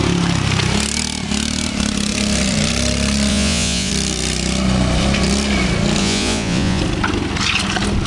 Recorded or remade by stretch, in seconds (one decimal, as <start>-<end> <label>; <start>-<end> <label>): 0.0-3.3 recorded; 3.3-3.9 remade; 3.9-6.0 recorded; 6.0-6.8 remade; 6.8-8.1 recorded